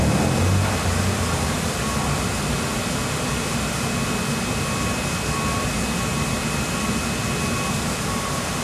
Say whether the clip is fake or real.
real